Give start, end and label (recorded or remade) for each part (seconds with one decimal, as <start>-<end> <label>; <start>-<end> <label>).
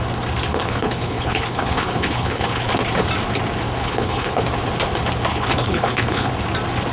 0.0-0.5 recorded; 0.5-2.7 remade; 2.7-3.8 recorded; 3.8-4.4 remade; 4.4-5.3 recorded; 5.3-6.3 remade; 6.3-6.9 recorded